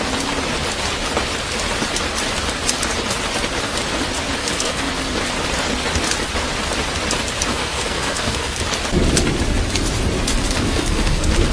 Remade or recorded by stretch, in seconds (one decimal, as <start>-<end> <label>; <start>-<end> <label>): 0.0-4.4 recorded; 4.4-4.9 remade; 4.9-7.5 recorded; 7.5-8.6 remade; 8.6-10.3 recorded; 10.3-11.5 remade